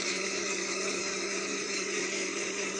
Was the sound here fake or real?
fake